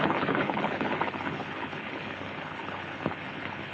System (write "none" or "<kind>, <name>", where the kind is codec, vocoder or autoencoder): codec, HILCodec